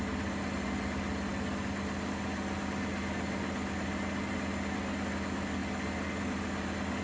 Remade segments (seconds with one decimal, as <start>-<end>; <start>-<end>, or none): none